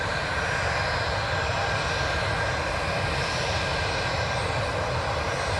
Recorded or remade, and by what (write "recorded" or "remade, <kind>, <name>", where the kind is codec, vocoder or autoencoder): recorded